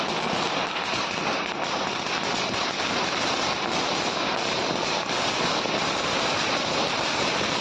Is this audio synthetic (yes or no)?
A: no